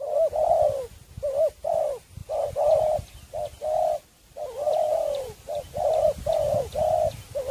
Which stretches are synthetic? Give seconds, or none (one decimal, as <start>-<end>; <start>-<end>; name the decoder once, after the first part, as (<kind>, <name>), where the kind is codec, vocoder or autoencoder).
4.9-7.0 (vocoder, BigVGAN v2)